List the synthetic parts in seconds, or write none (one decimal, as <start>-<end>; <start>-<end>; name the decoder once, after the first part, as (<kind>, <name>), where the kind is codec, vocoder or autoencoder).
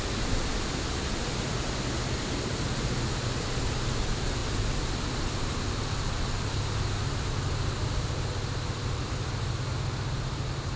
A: none